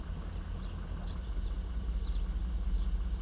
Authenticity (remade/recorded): recorded